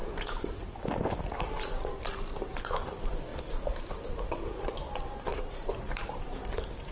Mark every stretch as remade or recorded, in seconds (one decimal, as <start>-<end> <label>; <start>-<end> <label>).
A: 0.0-0.8 remade; 0.8-3.3 recorded; 3.3-4.1 remade; 4.1-5.3 recorded; 5.3-6.0 remade; 6.0-6.9 recorded